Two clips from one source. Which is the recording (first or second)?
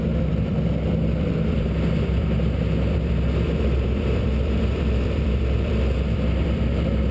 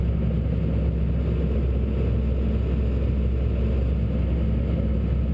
second